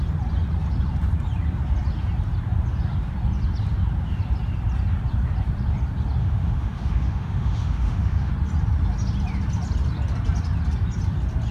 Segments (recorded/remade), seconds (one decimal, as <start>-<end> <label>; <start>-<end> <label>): 0.0-6.2 recorded; 6.2-8.3 remade; 8.3-11.5 recorded